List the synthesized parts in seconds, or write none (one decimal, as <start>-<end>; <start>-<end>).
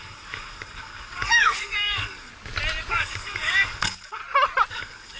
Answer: 0.0-2.3; 2.9-4.2; 4.7-5.2